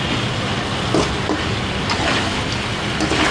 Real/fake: real